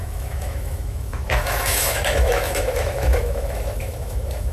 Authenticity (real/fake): fake